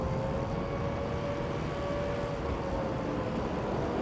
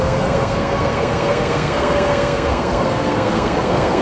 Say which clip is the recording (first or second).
first